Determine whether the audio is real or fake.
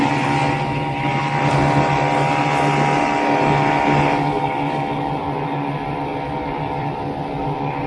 real